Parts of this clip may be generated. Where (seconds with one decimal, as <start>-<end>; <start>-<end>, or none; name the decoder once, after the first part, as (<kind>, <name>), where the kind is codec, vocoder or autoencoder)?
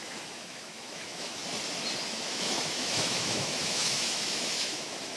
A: 0.0-1.4 (autoencoder, DAC-VAE); 2.1-5.2